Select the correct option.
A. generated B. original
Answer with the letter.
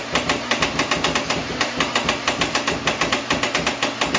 B